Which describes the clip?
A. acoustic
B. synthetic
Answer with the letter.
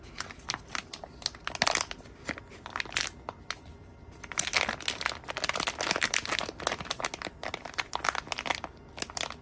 A